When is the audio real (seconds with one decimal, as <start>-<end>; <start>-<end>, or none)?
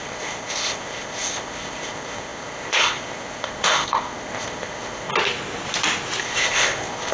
5.1-6.2